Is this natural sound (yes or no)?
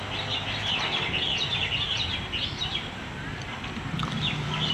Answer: yes